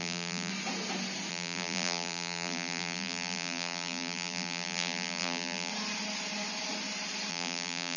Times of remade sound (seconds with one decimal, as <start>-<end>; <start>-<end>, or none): 0.0-0.5; 1.3-5.7; 7.3-8.0